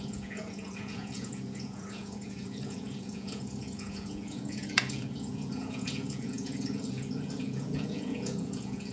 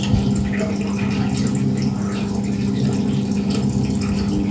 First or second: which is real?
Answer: second